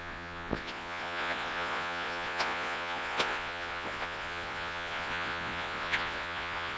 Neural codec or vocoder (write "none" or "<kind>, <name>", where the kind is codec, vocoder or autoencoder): vocoder, Vocos